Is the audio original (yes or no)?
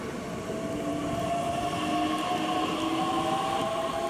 yes